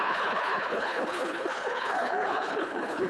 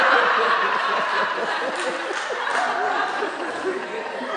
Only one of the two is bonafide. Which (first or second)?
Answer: second